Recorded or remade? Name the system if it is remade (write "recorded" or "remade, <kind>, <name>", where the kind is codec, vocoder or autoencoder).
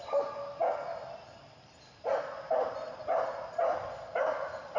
recorded